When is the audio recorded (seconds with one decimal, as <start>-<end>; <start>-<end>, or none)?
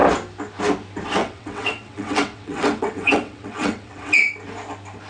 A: 0.0-1.2; 4.3-5.1